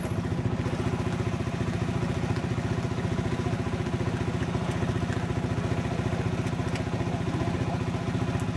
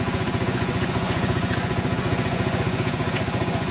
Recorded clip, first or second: first